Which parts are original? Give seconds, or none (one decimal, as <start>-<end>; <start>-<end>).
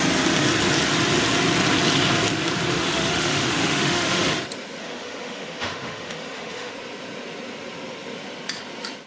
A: 0.0-2.7; 4.3-4.8; 6.7-9.1